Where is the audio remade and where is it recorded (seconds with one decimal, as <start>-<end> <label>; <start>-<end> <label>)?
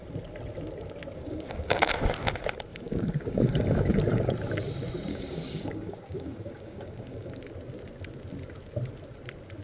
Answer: 0.0-1.2 recorded; 1.2-1.9 remade; 1.9-2.7 recorded; 2.7-4.3 remade; 4.3-5.1 recorded; 5.1-7.4 remade; 7.4-9.6 recorded